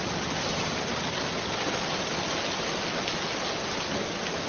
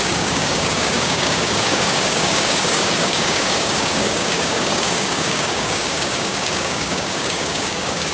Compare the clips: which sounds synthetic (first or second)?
second